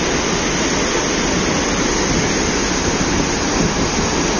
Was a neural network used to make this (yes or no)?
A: no